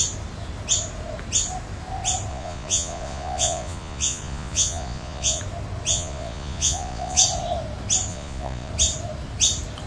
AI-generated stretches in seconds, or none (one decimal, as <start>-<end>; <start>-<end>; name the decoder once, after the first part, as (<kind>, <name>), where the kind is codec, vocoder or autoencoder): 2.3-5.4 (vocoder, Vocos); 5.9-7.2; 8.1-8.7